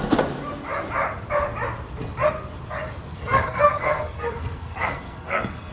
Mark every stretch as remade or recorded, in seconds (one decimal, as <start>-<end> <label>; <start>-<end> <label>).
0.0-3.1 recorded; 3.1-5.7 remade

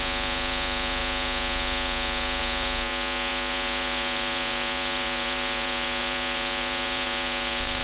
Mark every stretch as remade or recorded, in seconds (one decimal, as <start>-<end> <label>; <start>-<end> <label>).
0.0-7.8 remade

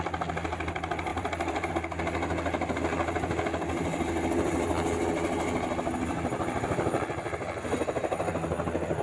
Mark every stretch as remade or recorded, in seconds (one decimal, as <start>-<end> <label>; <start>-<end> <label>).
0.0-1.1 recorded; 1.1-1.7 remade; 1.7-9.0 recorded

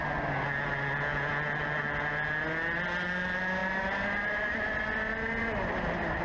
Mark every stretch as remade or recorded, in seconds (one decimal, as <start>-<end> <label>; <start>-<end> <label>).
0.0-6.2 recorded

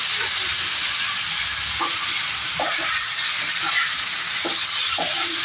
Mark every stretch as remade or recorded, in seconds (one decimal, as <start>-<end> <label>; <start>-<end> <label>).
0.0-5.4 recorded